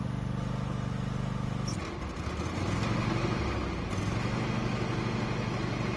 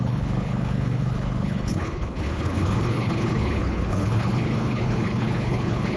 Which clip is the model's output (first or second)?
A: second